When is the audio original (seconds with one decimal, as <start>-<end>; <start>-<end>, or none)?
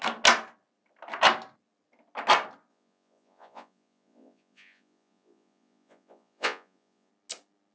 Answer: 0.0-2.7; 7.1-7.7